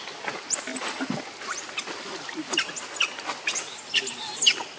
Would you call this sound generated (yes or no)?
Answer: no